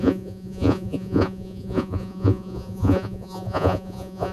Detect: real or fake fake